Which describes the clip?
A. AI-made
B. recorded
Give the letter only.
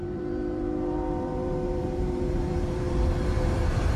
A